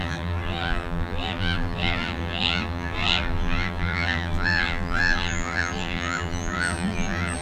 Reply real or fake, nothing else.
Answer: fake